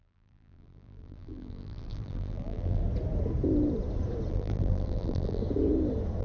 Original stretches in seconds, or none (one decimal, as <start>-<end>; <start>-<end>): 2.8-4.3; 5.4-6.2